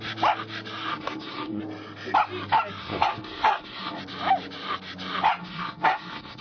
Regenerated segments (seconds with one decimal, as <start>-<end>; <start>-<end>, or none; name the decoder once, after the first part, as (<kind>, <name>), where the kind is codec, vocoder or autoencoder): 0.9-1.6 (codec, SNAC); 2.8-4.0; 5.4-6.4

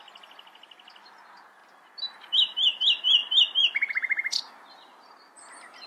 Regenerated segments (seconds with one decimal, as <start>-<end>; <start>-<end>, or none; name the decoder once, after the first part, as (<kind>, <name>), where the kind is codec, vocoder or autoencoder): none

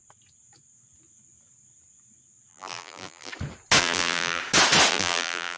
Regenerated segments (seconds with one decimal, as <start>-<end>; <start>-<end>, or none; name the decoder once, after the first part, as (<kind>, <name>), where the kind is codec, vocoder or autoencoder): 2.5-3.3 (vocoder, BigVGAN v2); 3.8-4.4; 4.9-5.6

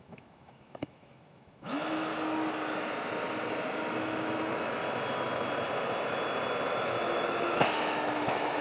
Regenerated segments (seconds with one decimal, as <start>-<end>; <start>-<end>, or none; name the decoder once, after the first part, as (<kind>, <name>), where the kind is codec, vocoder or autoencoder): 0.0-2.1 (autoencoder, DAC-VAE); 3.9-4.8; 6.7-8.6

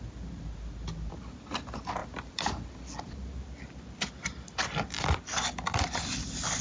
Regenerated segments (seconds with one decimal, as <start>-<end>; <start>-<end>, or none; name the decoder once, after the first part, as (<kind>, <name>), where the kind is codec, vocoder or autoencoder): none